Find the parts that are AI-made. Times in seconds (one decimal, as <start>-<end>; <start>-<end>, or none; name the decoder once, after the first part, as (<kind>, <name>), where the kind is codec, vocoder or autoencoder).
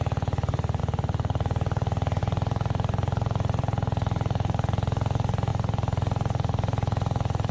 none